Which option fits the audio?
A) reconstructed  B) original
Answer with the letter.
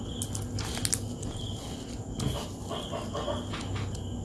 B